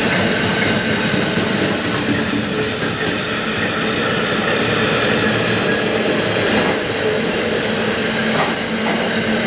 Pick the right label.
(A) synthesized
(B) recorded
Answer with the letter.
B